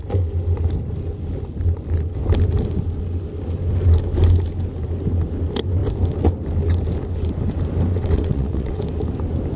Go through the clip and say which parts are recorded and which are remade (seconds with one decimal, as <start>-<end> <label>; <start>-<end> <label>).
0.0-7.9 recorded; 7.9-8.8 remade; 8.8-9.6 recorded